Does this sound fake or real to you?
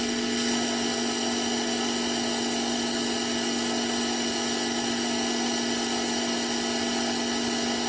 real